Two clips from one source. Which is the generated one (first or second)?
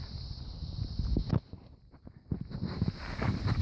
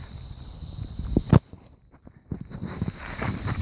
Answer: second